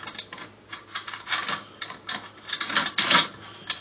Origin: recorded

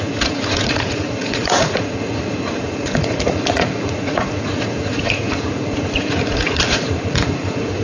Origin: remade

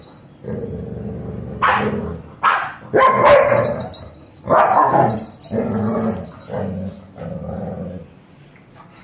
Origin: recorded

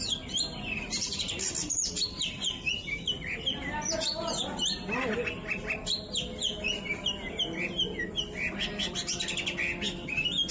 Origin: recorded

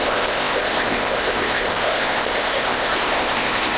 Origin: remade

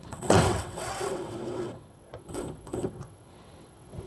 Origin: remade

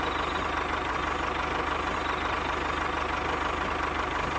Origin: recorded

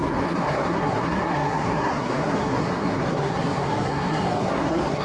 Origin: remade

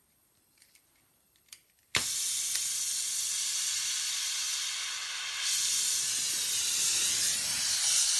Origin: recorded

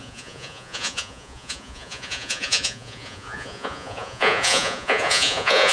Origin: remade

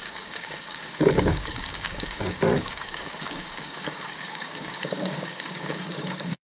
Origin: remade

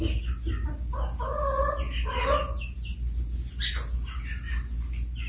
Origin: recorded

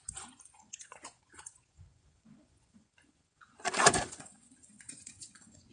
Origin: remade